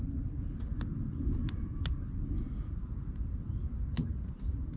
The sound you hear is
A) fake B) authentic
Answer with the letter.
B